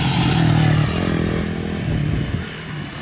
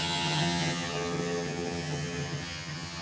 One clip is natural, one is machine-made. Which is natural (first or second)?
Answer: first